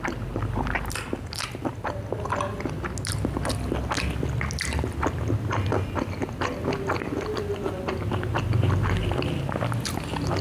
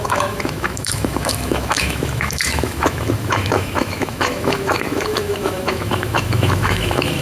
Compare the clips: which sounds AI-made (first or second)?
second